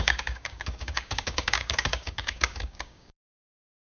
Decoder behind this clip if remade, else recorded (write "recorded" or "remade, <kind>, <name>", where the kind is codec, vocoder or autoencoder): remade, codec, DAC